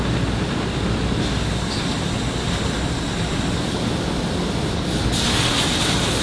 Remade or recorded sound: recorded